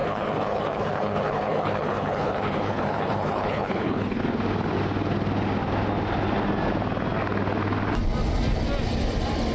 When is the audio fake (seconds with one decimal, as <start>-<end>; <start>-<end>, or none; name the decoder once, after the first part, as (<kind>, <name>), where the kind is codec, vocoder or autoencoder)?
0.0-4.2 (codec, HILCodec)